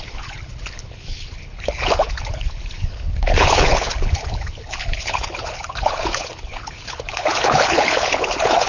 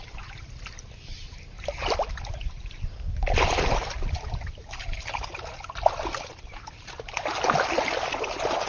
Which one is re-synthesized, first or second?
first